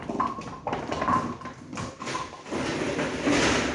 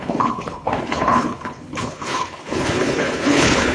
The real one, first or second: first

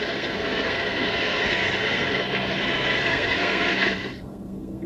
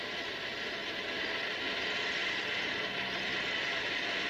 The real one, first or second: second